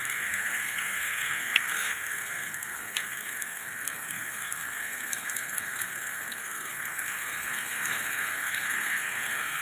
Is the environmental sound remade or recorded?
remade